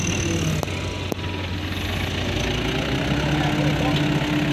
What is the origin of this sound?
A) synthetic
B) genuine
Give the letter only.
B